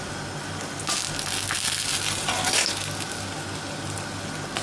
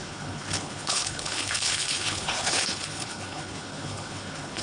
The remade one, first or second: second